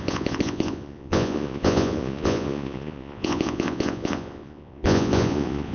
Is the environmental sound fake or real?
fake